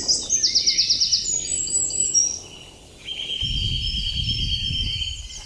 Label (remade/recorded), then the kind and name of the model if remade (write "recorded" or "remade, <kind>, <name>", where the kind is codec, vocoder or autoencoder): recorded